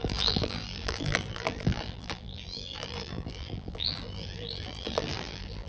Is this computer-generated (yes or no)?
yes